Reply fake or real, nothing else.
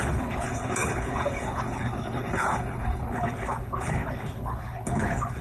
fake